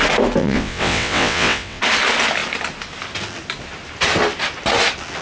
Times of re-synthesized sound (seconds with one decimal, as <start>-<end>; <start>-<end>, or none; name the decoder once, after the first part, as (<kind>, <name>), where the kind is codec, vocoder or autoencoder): 0.4-1.8 (vocoder, WaveNeXt)